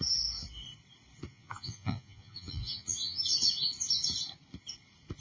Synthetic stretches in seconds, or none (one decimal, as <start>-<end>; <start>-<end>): 1.3-3.2